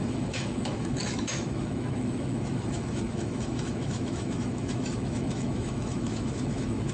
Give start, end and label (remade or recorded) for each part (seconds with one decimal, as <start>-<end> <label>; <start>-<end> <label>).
0.0-6.9 remade